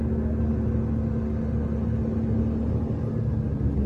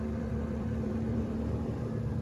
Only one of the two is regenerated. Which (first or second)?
second